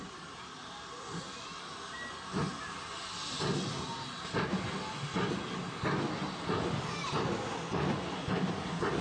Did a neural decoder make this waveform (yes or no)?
no